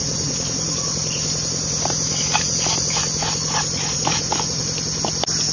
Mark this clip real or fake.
real